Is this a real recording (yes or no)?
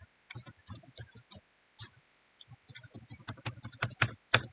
yes